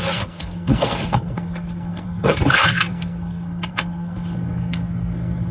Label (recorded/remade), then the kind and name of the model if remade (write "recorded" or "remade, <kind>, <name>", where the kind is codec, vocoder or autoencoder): remade, codec, SNAC